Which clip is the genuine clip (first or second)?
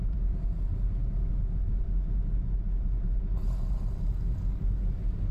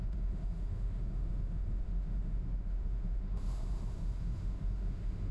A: first